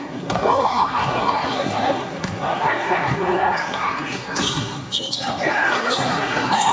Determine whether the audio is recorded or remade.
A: remade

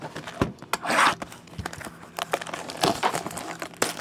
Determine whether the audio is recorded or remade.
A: recorded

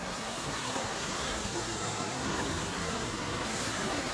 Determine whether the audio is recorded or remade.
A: remade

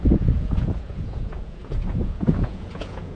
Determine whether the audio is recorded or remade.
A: remade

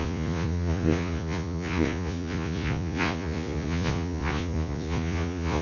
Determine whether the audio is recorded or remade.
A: remade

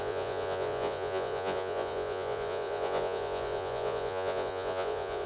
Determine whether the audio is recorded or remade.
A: remade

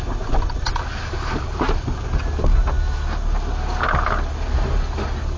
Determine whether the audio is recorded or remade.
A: recorded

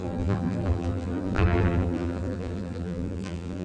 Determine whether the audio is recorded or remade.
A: remade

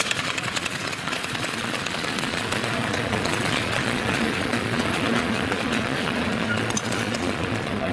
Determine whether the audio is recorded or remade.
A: remade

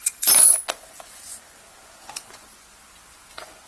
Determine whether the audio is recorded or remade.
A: remade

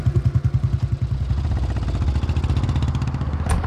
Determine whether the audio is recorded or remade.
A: recorded